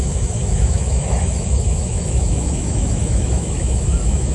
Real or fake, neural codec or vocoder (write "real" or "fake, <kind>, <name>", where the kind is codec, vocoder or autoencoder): fake, autoencoder, DAC-VAE